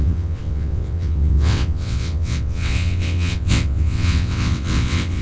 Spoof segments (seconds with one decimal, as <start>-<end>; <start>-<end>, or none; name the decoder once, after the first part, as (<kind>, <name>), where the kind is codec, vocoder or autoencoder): 0.0-5.2 (vocoder, WaveNeXt)